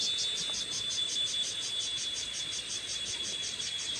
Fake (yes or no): no